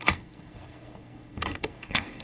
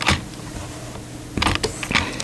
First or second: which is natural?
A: second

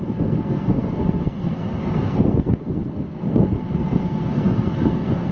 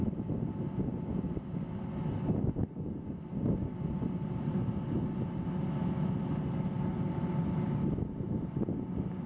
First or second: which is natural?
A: second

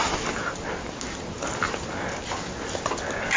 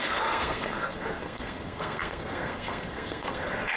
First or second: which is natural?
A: first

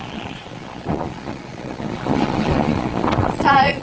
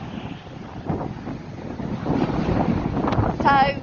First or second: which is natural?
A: second